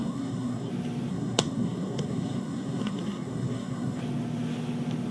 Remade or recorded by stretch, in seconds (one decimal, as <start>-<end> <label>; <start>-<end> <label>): 0.0-0.7 remade; 0.7-1.1 recorded; 1.1-4.0 remade; 4.0-5.1 recorded